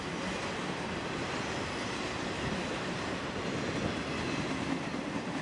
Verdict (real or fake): real